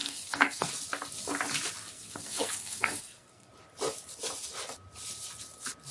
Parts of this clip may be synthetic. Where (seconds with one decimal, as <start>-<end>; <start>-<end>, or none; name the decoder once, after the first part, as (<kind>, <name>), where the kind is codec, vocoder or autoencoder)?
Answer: 0.0-0.7 (codec, SNAC); 1.9-3.5